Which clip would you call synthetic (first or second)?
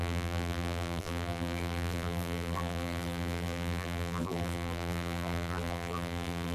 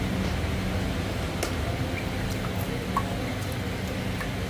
first